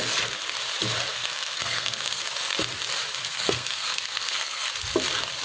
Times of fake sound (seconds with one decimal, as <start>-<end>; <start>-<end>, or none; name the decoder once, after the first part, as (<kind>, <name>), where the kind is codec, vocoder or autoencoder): 1.1-2.2 (codec, SNAC); 3.2-4.7